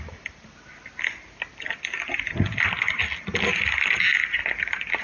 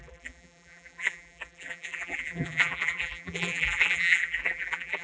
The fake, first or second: second